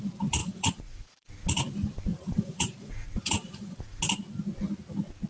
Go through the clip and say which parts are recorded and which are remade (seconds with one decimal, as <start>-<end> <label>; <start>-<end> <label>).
0.0-0.4 recorded; 0.4-1.3 remade; 1.3-2.1 recorded; 2.1-4.0 remade; 4.0-5.3 recorded